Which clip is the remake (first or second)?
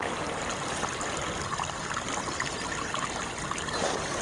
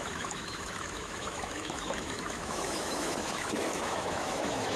second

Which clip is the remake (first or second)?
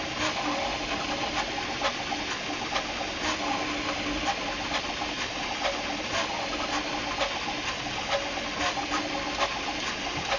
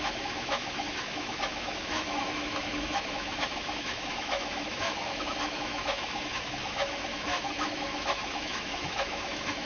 second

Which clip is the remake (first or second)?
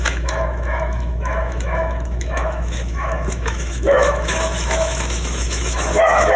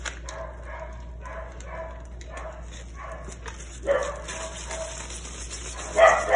first